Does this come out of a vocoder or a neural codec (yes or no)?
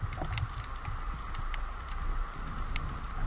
no